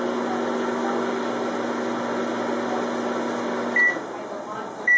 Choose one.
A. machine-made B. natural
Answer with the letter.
B